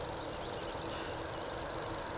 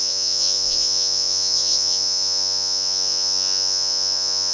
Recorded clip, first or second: first